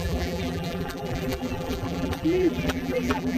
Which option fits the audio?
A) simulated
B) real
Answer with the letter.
A